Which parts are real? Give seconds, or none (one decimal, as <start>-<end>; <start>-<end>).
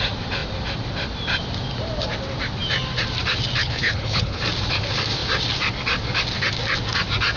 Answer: 0.0-3.6; 4.4-7.4